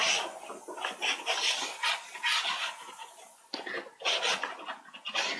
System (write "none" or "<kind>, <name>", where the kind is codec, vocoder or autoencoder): none